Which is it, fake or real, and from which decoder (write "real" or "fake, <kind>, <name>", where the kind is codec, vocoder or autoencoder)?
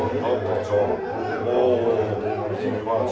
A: real